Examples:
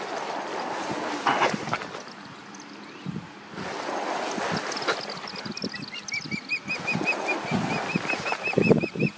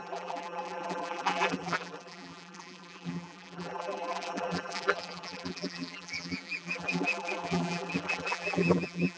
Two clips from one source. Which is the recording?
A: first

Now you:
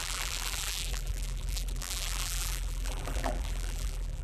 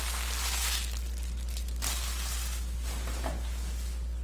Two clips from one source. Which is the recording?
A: second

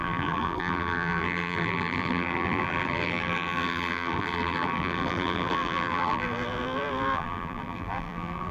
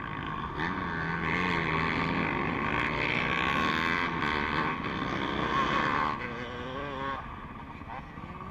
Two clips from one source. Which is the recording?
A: second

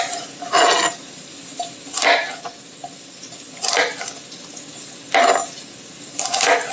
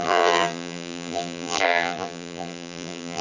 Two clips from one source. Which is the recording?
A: first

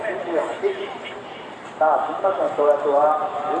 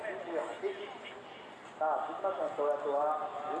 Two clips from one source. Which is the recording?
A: second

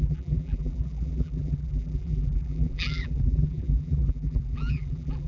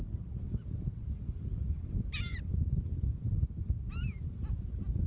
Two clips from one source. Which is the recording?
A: second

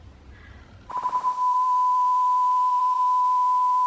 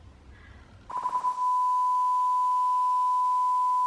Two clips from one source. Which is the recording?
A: second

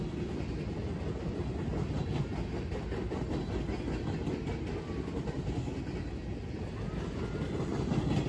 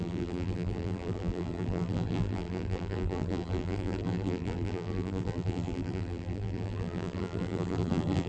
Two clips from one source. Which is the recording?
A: first